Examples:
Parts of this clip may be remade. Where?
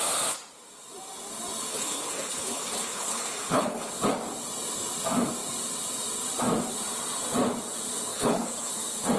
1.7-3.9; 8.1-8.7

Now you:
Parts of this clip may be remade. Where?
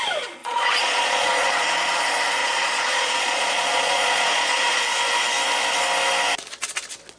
0.4-2.0; 2.4-4.8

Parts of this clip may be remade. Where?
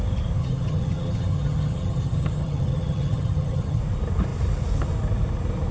0.4-3.8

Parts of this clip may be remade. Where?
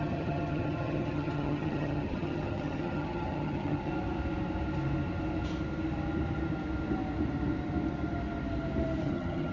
0.0-3.9; 9.0-9.5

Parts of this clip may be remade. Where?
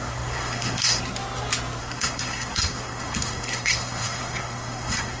0.0-1.0; 1.8-5.2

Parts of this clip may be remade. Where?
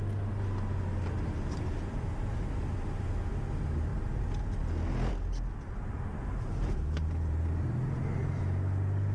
6.1-8.4